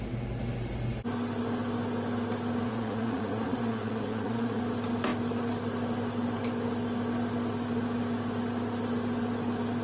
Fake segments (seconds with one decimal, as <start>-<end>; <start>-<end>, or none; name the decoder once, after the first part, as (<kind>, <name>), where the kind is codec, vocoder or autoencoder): 2.7-4.6 (vocoder, Vocos)